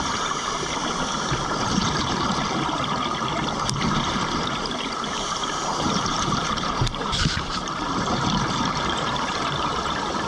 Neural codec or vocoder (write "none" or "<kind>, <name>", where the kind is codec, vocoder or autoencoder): vocoder, BigVGAN v2